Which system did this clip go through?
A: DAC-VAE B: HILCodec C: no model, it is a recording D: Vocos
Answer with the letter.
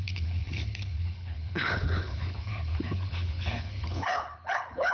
B